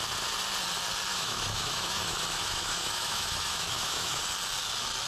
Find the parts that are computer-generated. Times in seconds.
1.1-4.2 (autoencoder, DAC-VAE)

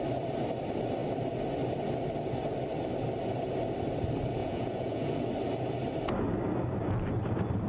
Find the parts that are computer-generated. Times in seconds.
4.4-5.2 (vocoder, Vocos)

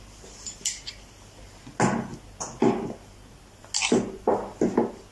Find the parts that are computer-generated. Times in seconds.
none

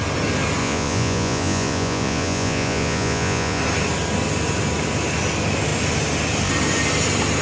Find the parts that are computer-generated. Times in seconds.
0.6-3.6 (vocoder, Vocos)

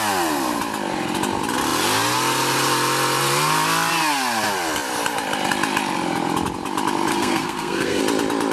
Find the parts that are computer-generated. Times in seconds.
7.1-8.0 (codec, SNAC)

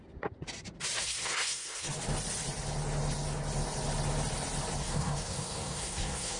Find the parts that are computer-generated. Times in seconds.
1.0-1.9 (codec, SNAC); 4.8-6.4

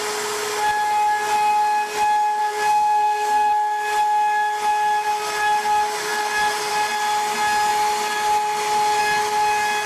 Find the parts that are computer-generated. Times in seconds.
2.4-3.5 (codec, SNAC)

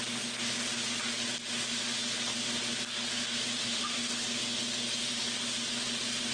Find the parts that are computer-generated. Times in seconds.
3.6-4.1 (autoencoder, DAC-VAE)